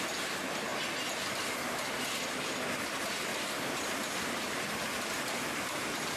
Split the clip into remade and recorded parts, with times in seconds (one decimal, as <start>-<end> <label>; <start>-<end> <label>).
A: 0.0-3.3 recorded; 3.3-4.5 remade; 4.5-6.2 recorded